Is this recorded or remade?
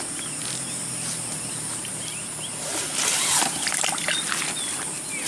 recorded